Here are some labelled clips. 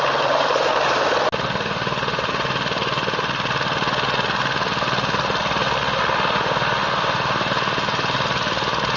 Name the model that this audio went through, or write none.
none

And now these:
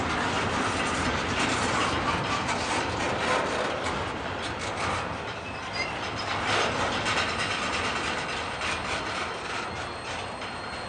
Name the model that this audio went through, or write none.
none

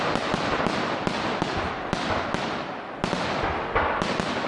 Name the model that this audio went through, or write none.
none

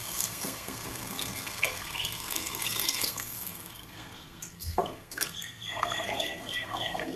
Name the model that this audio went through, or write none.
codec, SNAC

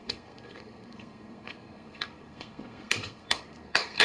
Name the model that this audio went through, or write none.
codec, SNAC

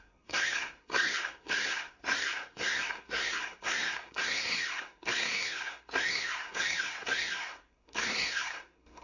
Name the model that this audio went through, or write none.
codec, SNAC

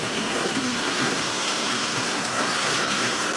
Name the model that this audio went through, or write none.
codec, SNAC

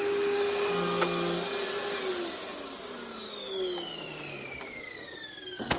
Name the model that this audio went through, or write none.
none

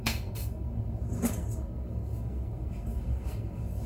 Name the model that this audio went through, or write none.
codec, SNAC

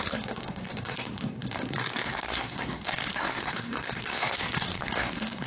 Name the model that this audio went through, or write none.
codec, SNAC